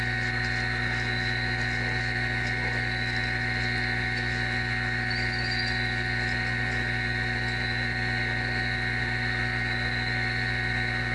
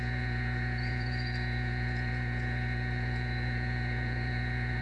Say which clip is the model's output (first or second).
second